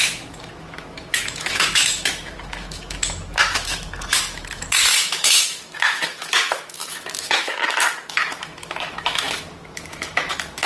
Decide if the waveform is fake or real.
fake